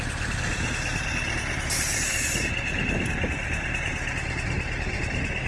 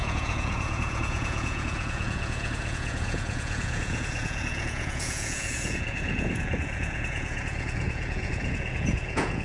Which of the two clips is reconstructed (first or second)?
second